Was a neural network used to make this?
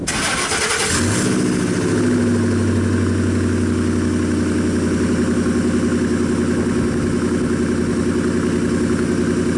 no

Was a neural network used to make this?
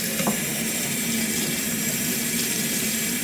yes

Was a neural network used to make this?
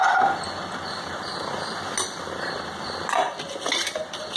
no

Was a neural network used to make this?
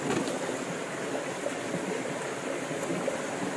no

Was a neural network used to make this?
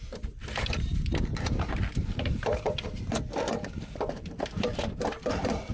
yes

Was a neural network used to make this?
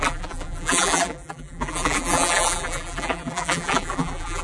yes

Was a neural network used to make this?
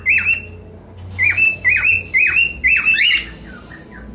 no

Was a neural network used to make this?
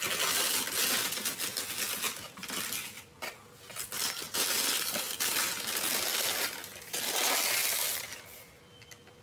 no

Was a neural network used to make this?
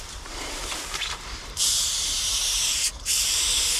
yes